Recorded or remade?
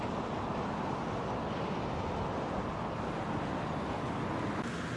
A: recorded